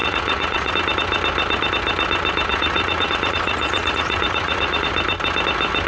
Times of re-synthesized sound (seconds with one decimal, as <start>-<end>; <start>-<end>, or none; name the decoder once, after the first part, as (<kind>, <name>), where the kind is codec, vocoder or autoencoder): 0.0-0.7 (vocoder, Vocos); 2.5-4.9